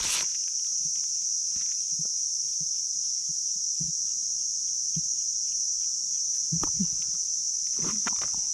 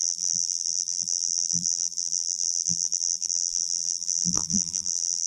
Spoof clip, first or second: second